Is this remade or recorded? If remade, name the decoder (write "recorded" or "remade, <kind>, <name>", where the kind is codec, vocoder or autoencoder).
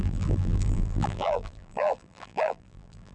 remade, vocoder, BigVGAN v2